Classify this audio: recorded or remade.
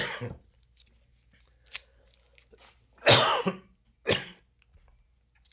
recorded